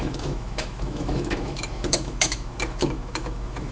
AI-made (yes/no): yes